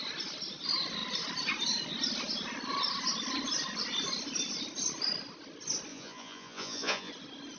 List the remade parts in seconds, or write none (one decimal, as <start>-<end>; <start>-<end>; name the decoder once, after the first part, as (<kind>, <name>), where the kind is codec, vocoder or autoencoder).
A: 5.9-7.1 (vocoder, Vocos)